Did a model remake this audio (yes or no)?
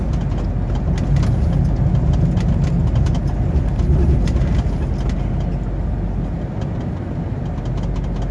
no